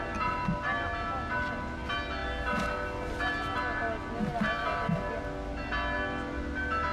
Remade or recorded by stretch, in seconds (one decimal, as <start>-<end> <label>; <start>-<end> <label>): 0.0-6.9 recorded